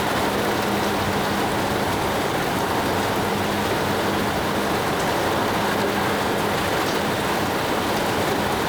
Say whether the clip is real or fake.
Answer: real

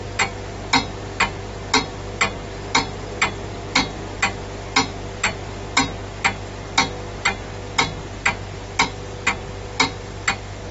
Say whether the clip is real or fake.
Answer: real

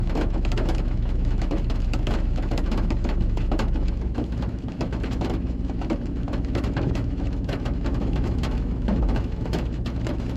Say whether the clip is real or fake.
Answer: fake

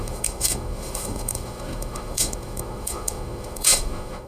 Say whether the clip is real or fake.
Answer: fake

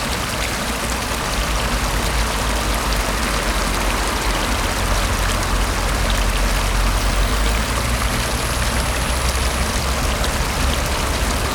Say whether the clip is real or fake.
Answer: real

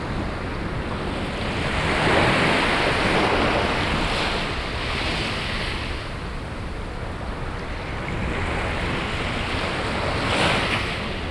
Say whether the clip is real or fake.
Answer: real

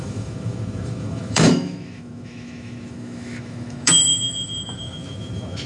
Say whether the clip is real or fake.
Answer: fake